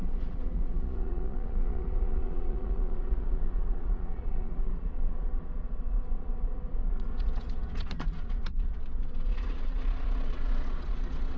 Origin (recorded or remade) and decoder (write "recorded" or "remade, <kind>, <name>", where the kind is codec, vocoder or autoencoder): remade, vocoder, Vocos